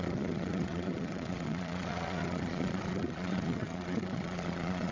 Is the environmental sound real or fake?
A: fake